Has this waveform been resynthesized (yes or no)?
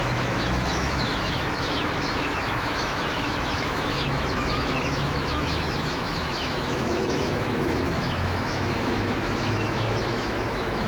yes